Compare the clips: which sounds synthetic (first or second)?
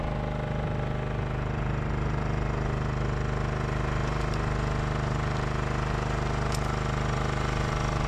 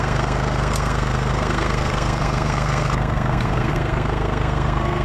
second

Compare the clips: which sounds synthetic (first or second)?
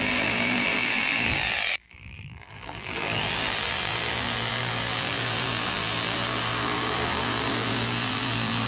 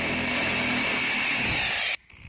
first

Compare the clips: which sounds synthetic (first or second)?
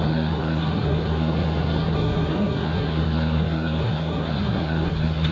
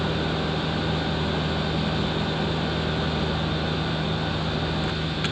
first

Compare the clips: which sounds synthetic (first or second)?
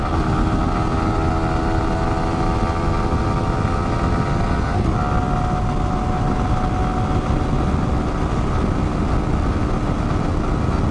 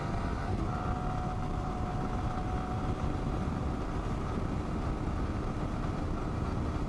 second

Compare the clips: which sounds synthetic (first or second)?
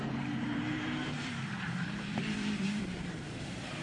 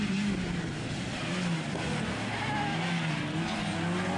first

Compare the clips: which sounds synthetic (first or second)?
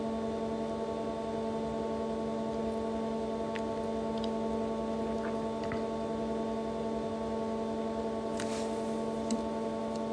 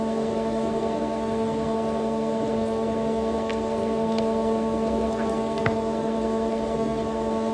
second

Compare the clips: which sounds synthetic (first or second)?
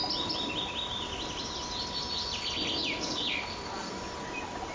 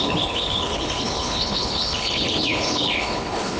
second